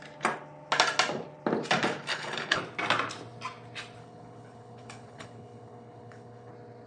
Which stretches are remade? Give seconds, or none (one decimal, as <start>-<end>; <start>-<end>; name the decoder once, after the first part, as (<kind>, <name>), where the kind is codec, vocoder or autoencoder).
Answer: 2.1-2.6 (codec, HILCodec); 4.0-6.5

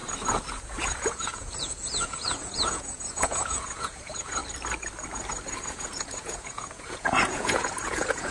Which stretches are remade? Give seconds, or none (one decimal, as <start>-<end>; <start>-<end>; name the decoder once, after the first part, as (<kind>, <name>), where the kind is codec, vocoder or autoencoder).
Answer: 0.5-4.4 (vocoder, Vocos); 5.6-8.3